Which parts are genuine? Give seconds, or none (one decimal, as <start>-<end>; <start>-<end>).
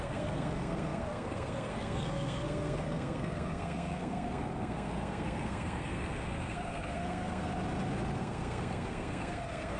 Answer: 7.5-8.2